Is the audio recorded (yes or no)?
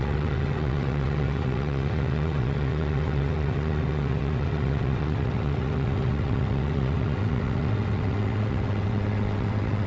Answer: no